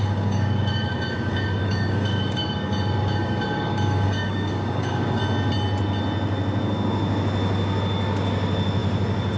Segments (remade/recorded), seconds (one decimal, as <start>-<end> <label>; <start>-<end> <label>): 0.0-5.2 remade; 5.2-9.4 recorded